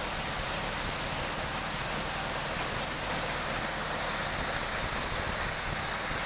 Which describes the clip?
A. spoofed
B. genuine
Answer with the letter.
B